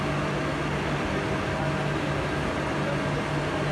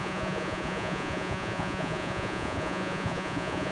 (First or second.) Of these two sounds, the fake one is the second